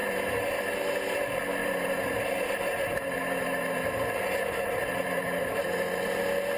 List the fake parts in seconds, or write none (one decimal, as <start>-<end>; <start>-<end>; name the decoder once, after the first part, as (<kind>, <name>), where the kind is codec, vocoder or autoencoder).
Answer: 0.0-1.1 (vocoder, BigVGAN v2); 1.6-5.6